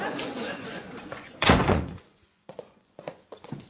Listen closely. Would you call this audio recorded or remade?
remade